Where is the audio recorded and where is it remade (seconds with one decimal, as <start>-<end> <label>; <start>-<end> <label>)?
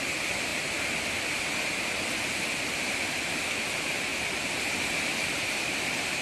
0.0-6.2 recorded